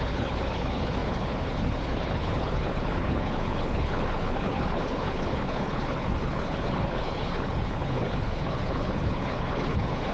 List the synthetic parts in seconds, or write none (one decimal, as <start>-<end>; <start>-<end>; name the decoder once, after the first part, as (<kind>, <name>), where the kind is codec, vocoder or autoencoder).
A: 0.0-10.1 (codec, HILCodec)